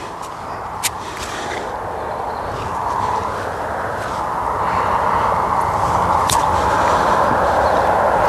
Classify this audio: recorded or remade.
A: recorded